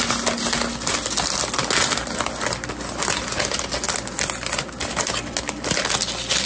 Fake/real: real